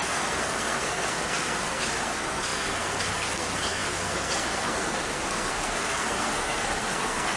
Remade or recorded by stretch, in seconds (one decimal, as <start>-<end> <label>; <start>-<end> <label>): 0.0-7.4 remade